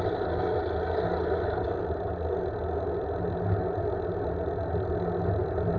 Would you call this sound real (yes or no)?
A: yes